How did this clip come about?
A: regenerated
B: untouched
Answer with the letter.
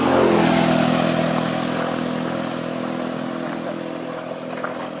B